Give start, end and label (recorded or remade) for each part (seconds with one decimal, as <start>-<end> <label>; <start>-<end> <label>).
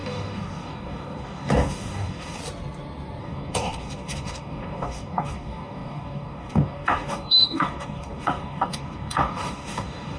0.0-2.4 remade; 2.4-3.2 recorded; 3.2-10.2 remade